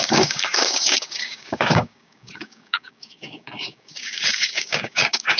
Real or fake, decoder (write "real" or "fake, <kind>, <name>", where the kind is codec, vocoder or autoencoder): fake, codec, DAC